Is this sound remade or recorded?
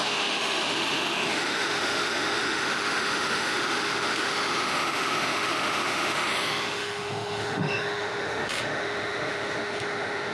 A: remade